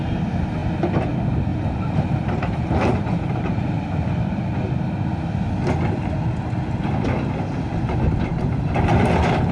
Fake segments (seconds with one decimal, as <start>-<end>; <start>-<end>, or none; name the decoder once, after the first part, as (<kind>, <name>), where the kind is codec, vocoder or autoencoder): 1.5-4.3 (vocoder, BigVGAN v2)